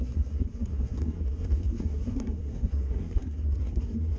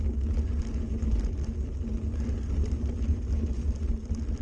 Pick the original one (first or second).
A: second